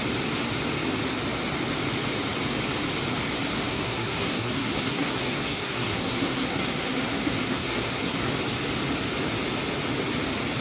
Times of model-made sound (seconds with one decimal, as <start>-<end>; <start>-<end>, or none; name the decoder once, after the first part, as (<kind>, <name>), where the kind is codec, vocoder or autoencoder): 3.7-8.3 (codec, SNAC)